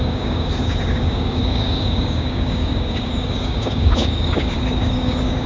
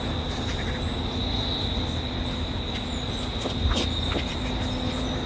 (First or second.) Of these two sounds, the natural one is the second